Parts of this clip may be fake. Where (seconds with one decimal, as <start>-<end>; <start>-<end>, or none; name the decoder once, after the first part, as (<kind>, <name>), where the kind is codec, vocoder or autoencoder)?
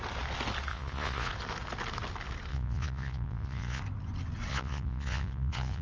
0.7-1.3 (vocoder, Vocos); 2.5-3.8; 4.5-5.8